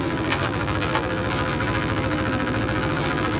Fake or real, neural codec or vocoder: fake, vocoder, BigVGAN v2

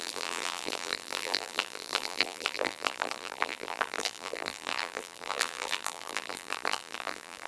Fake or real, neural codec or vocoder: fake, vocoder, BigVGAN v2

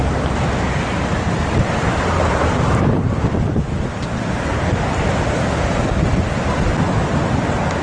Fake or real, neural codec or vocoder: real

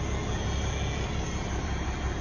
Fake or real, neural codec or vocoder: real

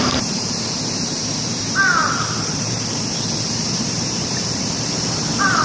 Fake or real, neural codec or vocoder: fake, vocoder, BigVGAN v2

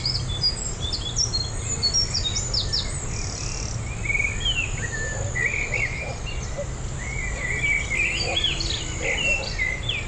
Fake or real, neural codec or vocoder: real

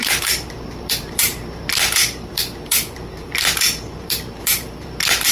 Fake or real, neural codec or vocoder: fake, vocoder, BigVGAN v2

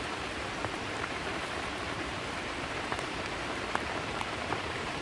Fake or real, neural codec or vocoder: fake, vocoder, BigVGAN v2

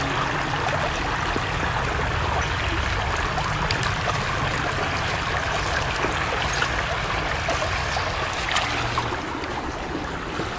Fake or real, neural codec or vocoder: real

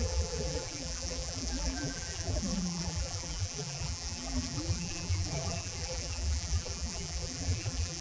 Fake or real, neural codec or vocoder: fake, vocoder, BigVGAN v2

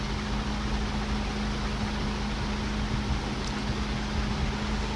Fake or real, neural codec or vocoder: real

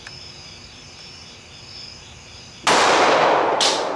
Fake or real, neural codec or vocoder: real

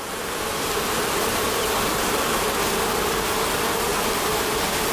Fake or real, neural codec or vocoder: fake, vocoder, BigVGAN v2